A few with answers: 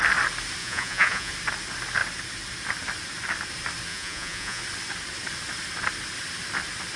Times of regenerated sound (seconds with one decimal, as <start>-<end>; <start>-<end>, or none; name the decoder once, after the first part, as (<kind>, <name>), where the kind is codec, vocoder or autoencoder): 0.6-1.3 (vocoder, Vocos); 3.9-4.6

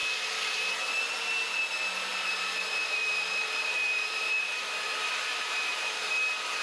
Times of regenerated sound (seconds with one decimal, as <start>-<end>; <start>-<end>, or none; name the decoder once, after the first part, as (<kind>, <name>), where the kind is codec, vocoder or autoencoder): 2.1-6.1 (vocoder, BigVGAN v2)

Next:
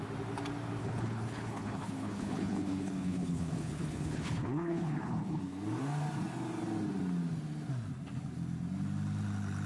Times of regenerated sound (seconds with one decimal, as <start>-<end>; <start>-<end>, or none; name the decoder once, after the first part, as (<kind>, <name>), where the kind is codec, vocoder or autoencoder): 0.8-5.4 (codec, HILCodec)

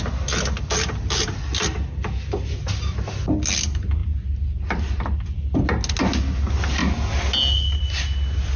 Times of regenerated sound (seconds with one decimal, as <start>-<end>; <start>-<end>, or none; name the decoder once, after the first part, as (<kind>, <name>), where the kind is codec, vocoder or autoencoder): none

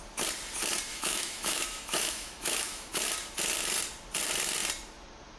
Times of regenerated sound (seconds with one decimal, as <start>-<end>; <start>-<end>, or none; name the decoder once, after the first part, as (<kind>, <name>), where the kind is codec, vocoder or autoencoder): 0.9-3.0 (autoencoder, DAC-VAE)

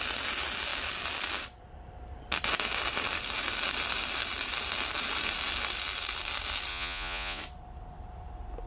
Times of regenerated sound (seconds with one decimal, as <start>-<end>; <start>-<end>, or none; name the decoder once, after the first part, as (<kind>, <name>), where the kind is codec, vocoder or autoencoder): 6.7-7.4 (vocoder, Vocos)

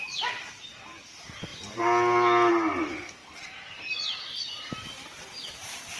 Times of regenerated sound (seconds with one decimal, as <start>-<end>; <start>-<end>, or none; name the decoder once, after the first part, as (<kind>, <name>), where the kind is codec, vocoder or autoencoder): none

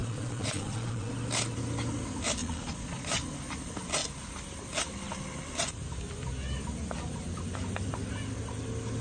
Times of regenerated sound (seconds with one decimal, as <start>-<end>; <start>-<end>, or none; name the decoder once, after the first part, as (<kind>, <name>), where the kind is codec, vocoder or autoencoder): 0.0-1.1 (vocoder, Vocos); 2.4-3.2